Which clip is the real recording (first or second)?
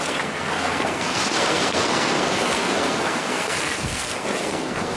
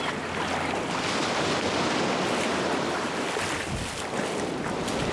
second